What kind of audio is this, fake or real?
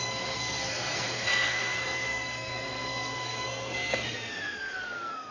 fake